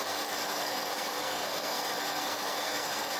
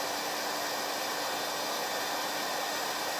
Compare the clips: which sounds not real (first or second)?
first